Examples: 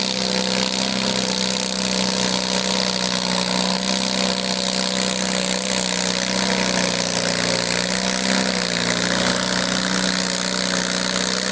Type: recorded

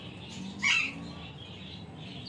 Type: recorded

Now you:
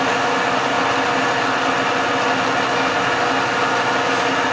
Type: recorded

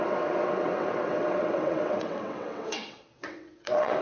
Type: remade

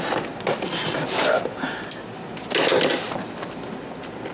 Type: recorded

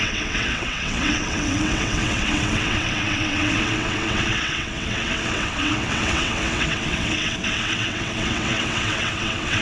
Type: remade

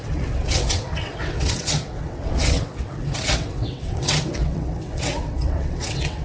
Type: remade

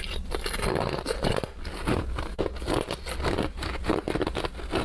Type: recorded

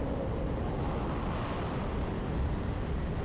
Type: recorded